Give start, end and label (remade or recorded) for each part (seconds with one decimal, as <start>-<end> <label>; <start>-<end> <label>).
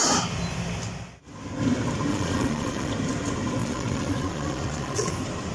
0.0-2.1 recorded; 2.1-2.9 remade; 2.9-3.6 recorded; 3.6-5.1 remade; 5.1-5.5 recorded